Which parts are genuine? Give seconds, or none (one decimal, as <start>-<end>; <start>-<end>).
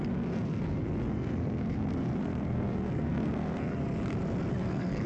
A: 3.8-4.5